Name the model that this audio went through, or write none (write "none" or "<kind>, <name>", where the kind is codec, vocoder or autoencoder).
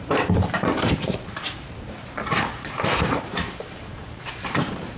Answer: vocoder, BigVGAN v2